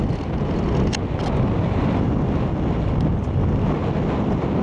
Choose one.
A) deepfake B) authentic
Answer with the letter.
B